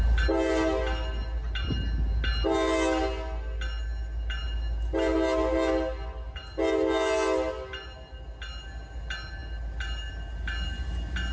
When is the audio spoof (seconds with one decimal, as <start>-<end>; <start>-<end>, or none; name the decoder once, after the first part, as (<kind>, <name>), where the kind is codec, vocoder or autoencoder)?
none